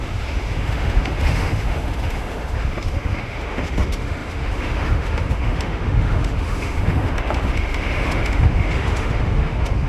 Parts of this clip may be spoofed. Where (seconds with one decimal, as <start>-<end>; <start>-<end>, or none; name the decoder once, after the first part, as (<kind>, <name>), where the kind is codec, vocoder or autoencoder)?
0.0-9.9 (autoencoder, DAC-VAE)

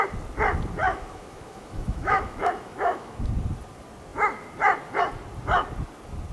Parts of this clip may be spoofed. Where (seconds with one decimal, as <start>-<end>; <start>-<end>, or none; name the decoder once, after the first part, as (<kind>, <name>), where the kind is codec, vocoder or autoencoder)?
0.8-3.3 (autoencoder, DAC-VAE)

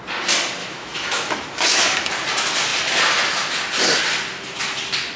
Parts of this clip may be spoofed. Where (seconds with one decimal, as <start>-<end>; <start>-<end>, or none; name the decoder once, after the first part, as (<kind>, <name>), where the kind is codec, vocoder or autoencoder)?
0.6-2.1 (autoencoder, DAC-VAE)

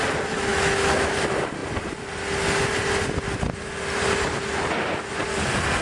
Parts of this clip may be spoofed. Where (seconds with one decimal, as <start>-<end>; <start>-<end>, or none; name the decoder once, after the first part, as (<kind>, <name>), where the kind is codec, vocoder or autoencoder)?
0.5-1.1 (autoencoder, DAC-VAE)

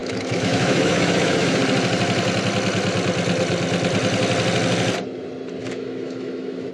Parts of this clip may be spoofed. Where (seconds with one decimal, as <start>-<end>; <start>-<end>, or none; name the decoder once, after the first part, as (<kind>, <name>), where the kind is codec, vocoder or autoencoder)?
0.0-1.6 (autoencoder, DAC-VAE); 5.6-6.7

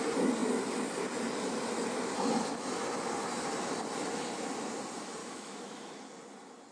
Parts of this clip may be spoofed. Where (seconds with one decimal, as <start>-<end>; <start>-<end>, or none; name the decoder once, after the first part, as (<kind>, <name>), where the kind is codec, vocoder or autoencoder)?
5.2-6.0 (autoencoder, DAC-VAE)